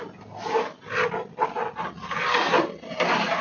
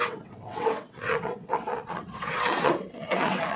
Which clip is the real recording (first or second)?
first